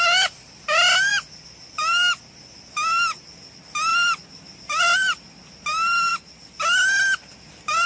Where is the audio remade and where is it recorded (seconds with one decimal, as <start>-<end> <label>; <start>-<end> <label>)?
0.0-1.1 recorded; 1.1-2.2 remade; 2.2-7.9 recorded